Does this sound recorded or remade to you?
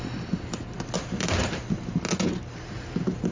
recorded